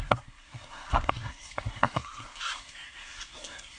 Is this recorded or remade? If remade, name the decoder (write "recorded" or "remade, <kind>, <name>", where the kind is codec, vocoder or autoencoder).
remade, codec, SNAC